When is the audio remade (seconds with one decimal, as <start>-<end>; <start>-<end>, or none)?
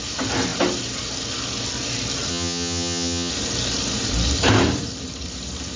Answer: 2.3-3.3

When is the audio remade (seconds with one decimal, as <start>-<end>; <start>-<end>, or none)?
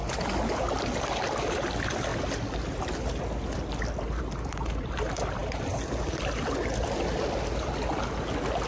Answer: none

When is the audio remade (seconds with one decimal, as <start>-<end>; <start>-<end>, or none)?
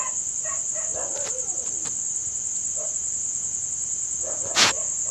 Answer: 2.2-5.1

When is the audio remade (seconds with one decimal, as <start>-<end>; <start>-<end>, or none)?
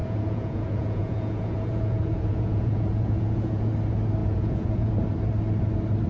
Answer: 0.0-3.7; 4.2-4.9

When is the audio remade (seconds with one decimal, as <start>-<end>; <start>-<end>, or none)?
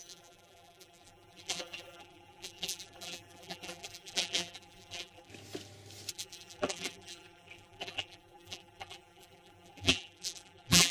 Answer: 0.0-5.3; 6.1-10.9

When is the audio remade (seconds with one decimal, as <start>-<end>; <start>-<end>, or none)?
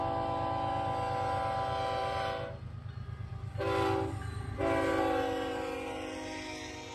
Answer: none